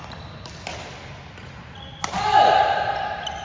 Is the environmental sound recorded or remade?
recorded